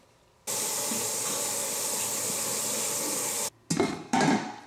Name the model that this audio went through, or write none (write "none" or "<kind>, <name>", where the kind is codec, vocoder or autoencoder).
none